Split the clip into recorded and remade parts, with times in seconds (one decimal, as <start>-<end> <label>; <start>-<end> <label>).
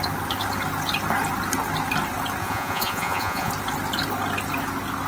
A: 0.0-2.4 recorded; 2.4-3.5 remade; 3.5-5.1 recorded